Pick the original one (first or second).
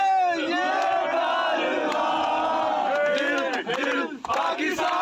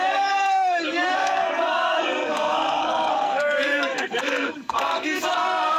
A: first